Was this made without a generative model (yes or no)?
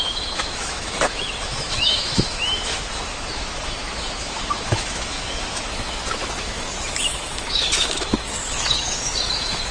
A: no